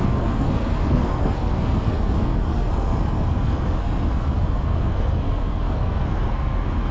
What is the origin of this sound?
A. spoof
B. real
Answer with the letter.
A